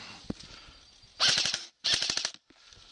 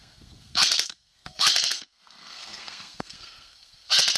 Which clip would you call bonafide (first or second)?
first